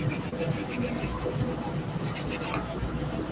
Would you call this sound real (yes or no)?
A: yes